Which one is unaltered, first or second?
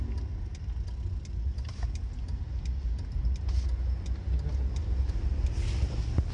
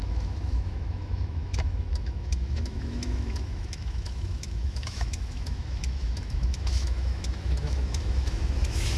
first